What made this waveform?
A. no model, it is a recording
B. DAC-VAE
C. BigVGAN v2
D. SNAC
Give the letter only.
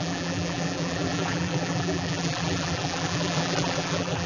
C